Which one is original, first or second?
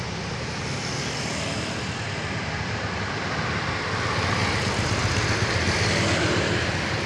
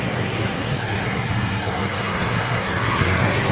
first